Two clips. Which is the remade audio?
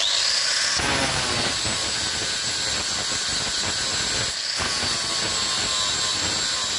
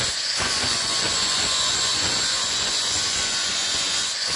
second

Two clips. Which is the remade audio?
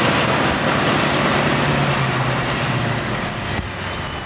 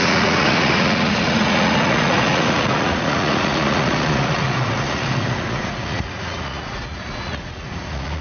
second